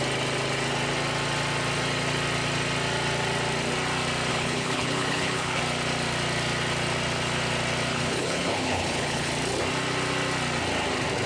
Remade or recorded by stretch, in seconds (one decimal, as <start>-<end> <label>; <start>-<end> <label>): 0.0-4.3 recorded; 4.3-5.6 remade; 5.6-7.9 recorded; 7.9-9.3 remade; 9.3-11.3 recorded